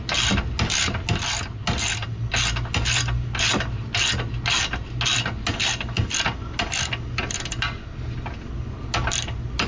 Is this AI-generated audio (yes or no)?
no